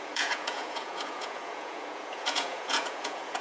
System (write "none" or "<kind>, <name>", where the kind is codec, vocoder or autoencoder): vocoder, Vocos